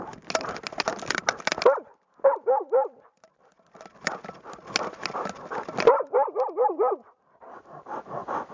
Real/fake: real